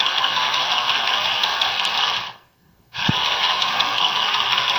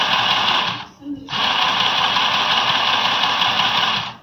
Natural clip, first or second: second